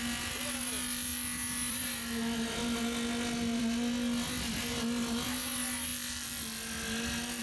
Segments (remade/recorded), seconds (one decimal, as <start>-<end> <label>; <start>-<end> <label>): 0.0-7.4 recorded